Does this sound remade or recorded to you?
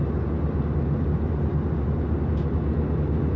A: recorded